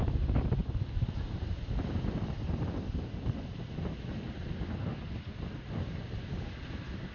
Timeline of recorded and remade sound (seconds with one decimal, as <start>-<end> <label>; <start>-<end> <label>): 0.0-7.1 recorded